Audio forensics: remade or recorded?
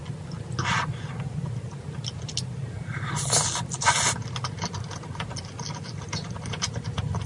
recorded